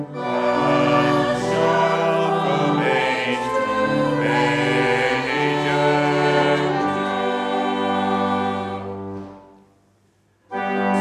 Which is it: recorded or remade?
recorded